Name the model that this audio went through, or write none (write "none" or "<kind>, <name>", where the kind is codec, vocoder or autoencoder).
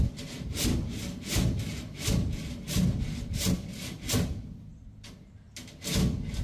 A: none